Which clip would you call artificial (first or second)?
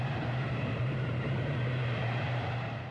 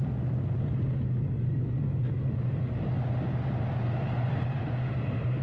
first